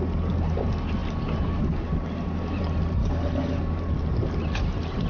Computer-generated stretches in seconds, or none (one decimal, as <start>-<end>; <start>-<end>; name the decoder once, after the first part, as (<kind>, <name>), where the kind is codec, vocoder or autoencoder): none